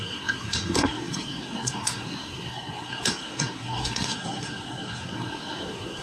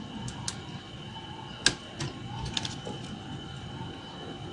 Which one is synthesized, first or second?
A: first